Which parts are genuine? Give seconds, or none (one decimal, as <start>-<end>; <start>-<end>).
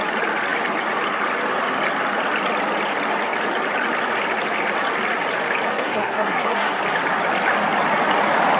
0.0-5.7; 6.8-8.6